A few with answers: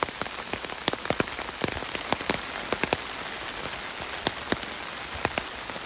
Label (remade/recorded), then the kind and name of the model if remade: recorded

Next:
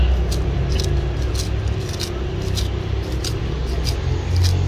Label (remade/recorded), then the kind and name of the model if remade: recorded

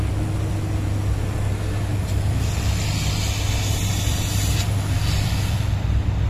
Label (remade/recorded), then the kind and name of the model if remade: recorded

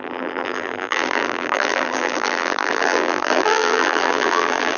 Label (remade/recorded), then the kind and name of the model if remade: remade, vocoder, BigVGAN v2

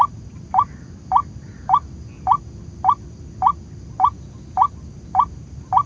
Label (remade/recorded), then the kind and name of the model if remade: recorded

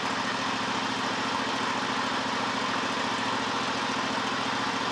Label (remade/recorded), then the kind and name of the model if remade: recorded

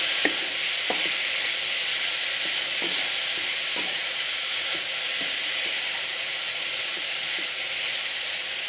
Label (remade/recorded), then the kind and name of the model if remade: recorded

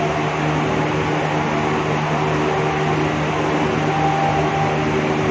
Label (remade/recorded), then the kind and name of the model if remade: recorded